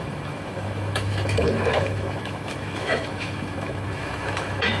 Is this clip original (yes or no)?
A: no